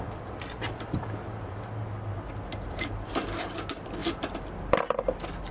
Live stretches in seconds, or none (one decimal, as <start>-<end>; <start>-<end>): 0.0-5.5